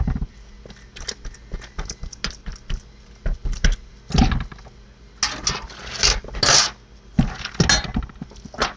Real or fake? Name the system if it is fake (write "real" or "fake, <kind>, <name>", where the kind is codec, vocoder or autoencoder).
real